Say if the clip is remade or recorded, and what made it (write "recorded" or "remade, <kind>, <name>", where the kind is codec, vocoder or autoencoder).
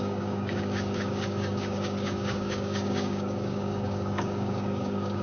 remade, codec, DAC